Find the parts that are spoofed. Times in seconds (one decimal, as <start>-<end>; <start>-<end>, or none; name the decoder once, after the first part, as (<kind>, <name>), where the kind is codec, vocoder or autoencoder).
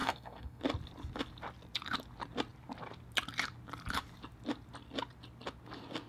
0.0-0.6 (codec, SNAC)